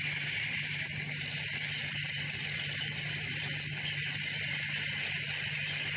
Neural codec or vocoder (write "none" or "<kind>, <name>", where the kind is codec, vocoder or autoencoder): none